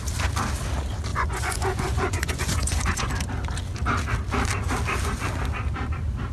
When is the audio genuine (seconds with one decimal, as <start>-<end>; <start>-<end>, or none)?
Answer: 0.0-1.1; 3.1-6.3